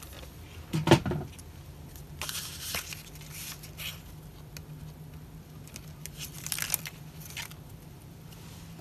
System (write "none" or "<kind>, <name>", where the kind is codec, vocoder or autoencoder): none